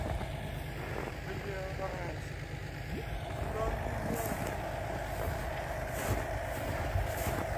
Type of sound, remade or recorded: recorded